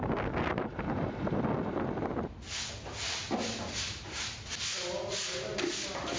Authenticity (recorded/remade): recorded